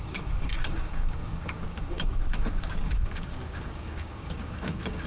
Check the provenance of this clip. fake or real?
fake